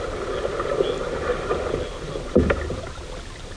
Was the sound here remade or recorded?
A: recorded